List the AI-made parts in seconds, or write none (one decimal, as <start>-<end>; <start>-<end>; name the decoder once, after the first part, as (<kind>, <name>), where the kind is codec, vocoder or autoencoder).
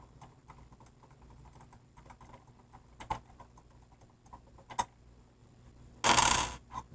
none